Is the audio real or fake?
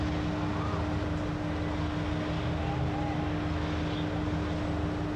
real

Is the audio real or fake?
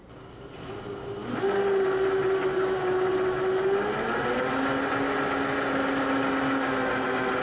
real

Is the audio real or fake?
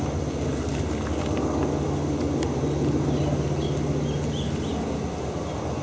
real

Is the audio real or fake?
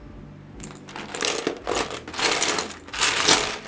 real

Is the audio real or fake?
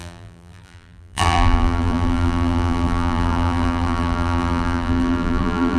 fake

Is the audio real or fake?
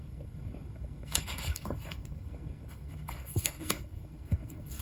fake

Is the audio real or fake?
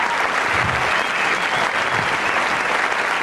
real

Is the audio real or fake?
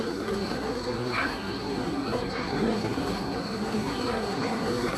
fake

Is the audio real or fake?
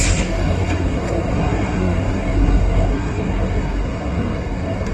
fake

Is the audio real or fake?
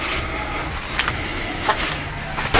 real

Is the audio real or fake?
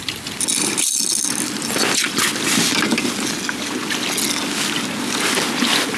real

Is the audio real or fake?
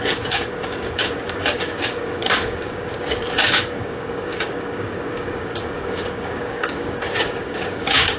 fake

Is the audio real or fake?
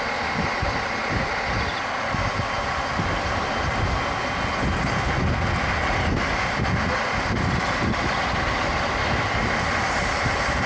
real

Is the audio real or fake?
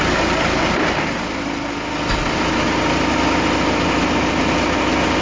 real